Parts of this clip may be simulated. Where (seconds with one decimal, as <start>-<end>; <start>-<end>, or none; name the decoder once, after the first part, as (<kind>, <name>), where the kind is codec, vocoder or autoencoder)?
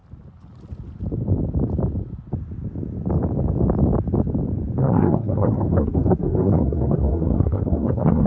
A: 4.8-8.3 (codec, SNAC)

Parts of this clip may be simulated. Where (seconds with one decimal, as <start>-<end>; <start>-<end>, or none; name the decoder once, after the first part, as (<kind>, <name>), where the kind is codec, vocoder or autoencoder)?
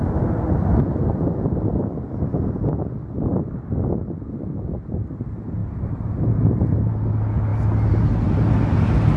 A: none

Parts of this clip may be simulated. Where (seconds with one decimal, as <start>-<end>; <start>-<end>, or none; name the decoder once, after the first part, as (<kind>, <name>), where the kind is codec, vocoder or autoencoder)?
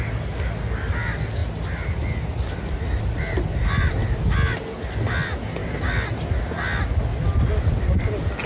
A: none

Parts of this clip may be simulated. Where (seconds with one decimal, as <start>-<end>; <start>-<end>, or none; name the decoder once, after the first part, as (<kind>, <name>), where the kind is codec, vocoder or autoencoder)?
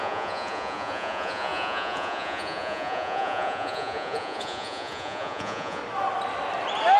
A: 0.0-5.8 (vocoder, Vocos)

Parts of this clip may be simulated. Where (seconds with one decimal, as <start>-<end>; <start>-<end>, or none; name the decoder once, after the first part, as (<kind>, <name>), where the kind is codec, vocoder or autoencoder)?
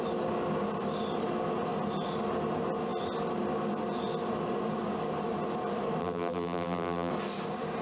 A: 6.0-7.1 (vocoder, BigVGAN v2)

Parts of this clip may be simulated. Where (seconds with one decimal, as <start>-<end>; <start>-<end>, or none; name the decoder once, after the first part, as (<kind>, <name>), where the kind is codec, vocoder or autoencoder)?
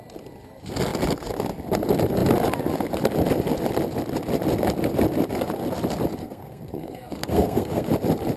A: 6.2-7.9 (codec, SNAC)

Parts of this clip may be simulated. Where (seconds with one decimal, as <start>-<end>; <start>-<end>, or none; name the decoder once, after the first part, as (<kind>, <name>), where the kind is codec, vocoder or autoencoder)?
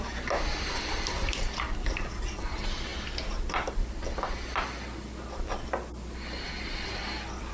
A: none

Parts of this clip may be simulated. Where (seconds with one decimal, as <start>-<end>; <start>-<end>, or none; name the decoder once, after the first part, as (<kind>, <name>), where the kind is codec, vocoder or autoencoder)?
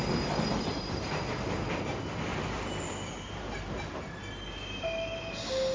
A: 2.3-3.3 (vocoder, BigVGAN v2)